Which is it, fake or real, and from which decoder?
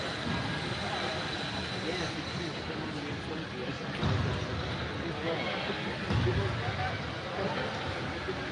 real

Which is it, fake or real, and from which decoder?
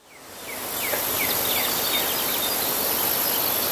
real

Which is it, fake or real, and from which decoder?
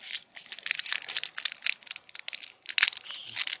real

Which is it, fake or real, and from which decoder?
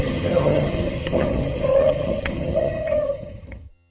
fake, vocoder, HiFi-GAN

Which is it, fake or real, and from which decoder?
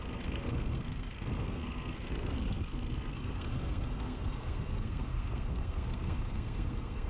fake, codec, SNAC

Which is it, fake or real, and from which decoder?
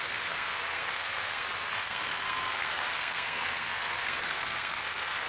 fake, codec, SNAC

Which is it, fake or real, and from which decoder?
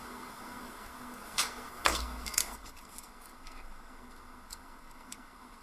fake, codec, SNAC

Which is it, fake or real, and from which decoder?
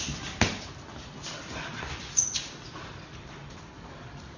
real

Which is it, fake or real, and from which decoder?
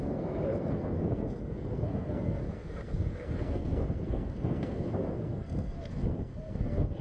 fake, codec, SNAC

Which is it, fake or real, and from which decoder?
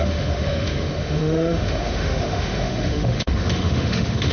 fake, autoencoder, DAC-VAE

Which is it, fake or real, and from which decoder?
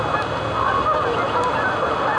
real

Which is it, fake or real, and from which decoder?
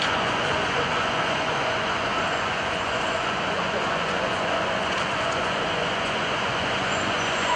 fake, vocoder, Vocos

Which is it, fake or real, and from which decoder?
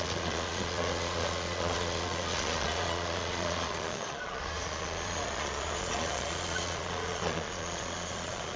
fake, vocoder, Vocos